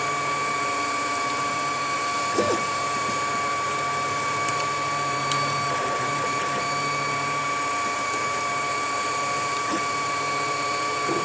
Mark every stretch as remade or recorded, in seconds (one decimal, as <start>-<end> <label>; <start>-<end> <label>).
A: 0.0-2.1 remade; 2.1-2.6 recorded; 2.6-11.2 remade